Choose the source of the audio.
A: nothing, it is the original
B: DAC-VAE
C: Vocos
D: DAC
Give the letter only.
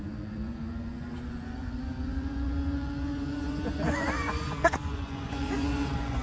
C